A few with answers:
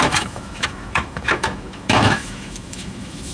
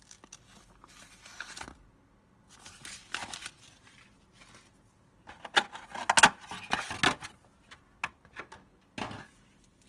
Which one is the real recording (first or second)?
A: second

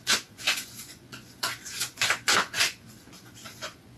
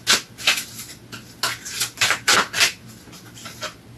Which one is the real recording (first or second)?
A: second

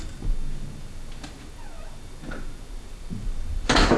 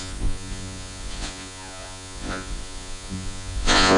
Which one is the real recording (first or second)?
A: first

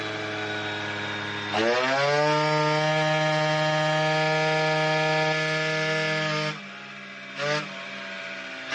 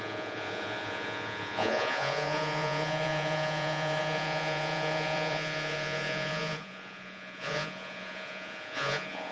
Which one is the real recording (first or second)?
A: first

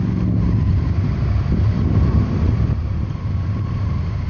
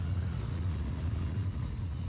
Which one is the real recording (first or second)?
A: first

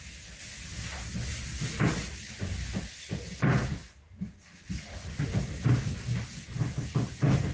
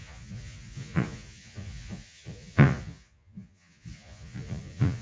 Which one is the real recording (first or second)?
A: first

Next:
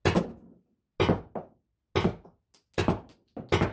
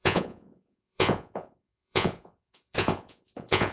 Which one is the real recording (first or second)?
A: first